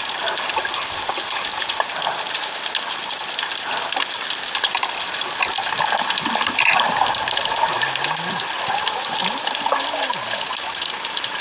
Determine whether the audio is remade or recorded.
recorded